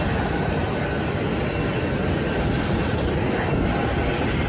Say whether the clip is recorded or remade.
recorded